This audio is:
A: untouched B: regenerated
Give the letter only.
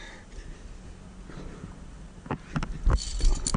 A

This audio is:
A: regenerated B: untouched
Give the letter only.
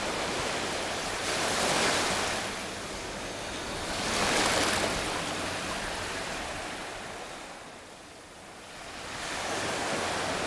B